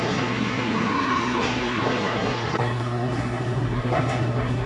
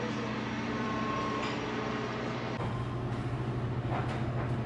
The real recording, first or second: second